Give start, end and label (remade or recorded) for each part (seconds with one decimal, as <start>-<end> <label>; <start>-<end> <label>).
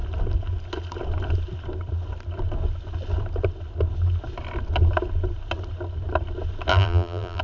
0.0-6.7 recorded; 6.7-7.4 remade